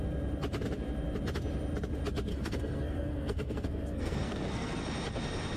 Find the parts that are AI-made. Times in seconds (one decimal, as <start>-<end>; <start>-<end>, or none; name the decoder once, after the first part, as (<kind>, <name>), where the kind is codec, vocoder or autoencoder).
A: 2.3-4.8 (codec, SNAC)